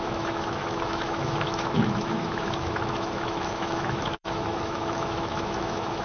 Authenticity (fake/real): fake